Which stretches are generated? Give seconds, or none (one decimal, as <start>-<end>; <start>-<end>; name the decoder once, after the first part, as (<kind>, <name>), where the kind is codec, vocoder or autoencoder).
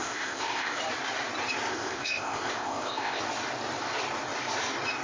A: 0.0-0.8 (codec, ZipCodec); 1.7-3.2